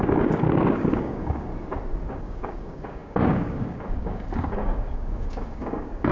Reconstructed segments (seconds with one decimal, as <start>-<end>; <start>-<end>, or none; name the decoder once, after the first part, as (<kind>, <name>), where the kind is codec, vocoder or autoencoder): 0.0-1.5 (codec, DAC); 2.1-6.1